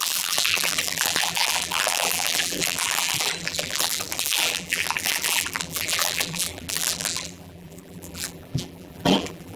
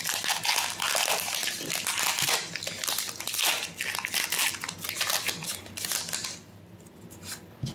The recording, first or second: second